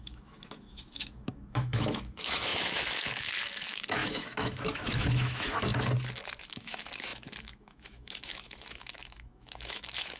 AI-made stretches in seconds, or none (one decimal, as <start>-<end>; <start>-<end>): 0.0-5.7; 6.5-10.2